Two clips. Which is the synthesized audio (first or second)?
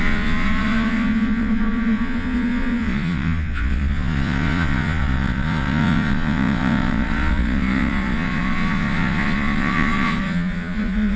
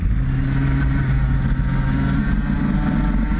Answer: first